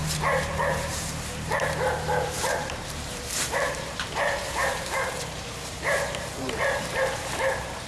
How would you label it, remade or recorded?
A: remade